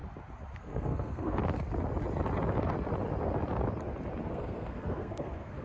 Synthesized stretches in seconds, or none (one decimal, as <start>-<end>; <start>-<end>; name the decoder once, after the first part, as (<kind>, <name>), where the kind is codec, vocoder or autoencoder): 0.6-1.4 (codec, SNAC); 4.3-5.6